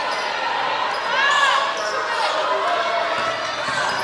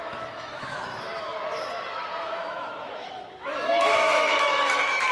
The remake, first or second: second